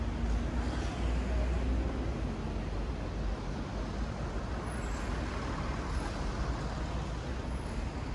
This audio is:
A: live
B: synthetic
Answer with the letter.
A